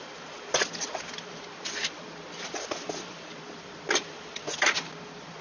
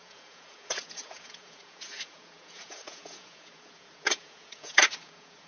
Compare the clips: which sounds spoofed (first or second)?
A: second